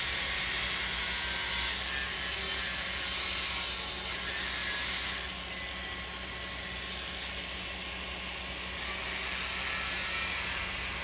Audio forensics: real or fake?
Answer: real